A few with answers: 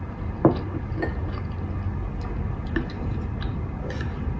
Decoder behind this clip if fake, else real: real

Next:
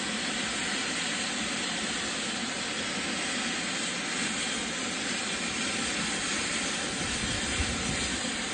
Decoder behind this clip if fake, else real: real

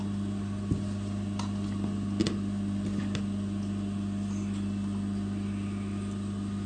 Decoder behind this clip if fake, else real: real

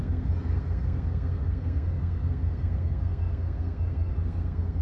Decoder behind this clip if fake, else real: fake, codec, SNAC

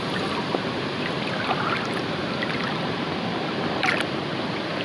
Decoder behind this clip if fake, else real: real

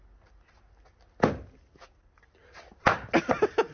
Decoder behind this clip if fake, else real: real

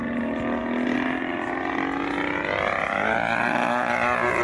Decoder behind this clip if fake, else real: real